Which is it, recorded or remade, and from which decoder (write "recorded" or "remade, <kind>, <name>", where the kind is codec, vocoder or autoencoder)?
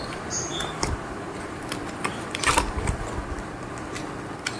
remade, vocoder, BigVGAN v2